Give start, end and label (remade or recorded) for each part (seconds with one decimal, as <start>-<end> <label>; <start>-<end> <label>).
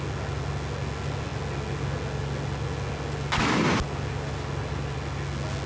0.0-5.7 recorded